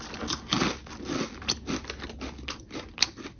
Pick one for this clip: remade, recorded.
recorded